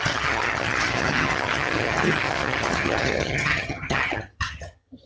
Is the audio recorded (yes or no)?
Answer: no